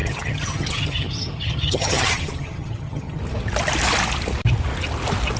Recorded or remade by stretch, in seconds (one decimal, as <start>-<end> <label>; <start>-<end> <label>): 0.0-3.2 remade; 3.2-5.4 recorded